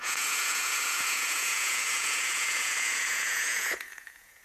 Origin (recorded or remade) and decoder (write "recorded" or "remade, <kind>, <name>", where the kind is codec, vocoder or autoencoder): remade, vocoder, Vocos